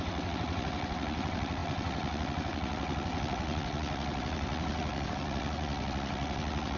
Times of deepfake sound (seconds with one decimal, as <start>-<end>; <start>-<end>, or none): 0.0-6.8